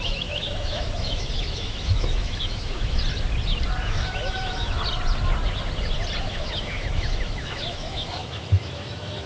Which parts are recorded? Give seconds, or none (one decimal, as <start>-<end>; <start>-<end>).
3.0-3.8; 4.8-6.2